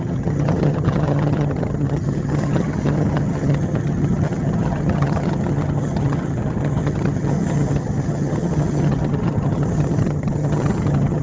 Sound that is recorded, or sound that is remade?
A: remade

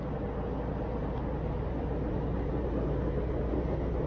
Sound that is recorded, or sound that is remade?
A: recorded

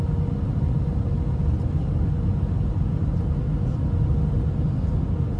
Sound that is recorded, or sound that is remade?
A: recorded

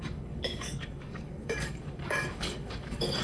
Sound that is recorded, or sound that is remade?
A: remade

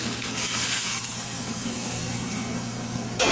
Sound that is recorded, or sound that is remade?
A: remade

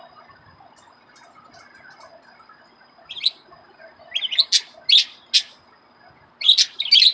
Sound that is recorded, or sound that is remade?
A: recorded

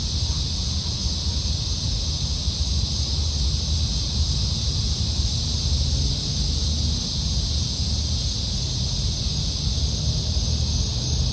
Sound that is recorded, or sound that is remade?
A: recorded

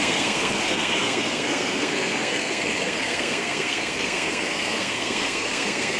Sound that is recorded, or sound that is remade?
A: remade